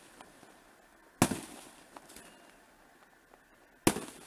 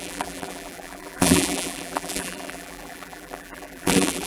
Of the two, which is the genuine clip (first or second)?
first